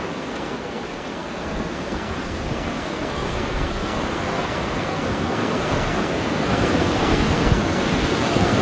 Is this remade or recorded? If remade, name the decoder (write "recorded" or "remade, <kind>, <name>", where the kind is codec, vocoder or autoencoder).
remade, codec, SNAC